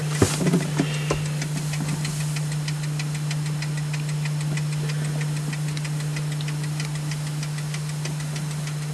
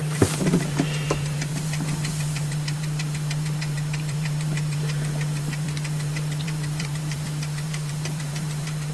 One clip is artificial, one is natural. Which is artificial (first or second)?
second